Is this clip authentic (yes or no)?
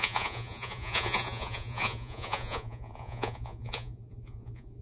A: no